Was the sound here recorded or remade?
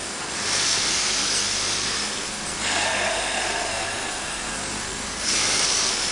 remade